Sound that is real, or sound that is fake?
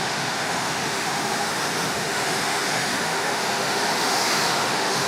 fake